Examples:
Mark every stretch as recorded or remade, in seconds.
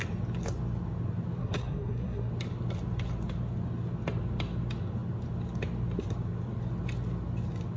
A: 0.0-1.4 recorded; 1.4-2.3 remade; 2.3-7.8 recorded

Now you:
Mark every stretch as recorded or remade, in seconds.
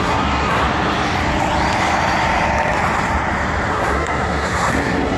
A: 0.0-0.6 remade; 0.6-3.7 recorded; 3.7-5.2 remade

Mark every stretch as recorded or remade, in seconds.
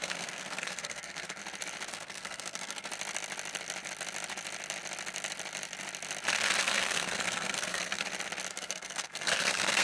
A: 0.0-1.4 remade; 1.4-1.9 recorded; 1.9-2.9 remade; 2.9-6.6 recorded; 6.6-8.0 remade; 8.0-8.5 recorded; 8.5-9.8 remade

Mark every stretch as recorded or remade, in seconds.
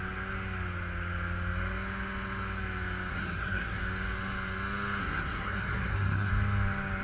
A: 0.0-3.1 recorded; 3.1-3.8 remade; 3.8-5.0 recorded; 5.0-6.3 remade; 6.3-7.0 recorded